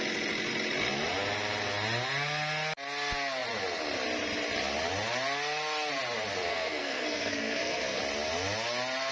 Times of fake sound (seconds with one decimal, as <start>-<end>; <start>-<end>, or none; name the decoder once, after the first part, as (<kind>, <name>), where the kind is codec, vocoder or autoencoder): 6.5-8.0 (codec, SNAC)